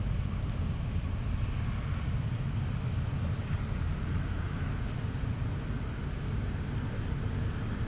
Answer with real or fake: real